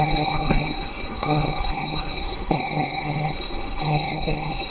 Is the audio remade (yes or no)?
yes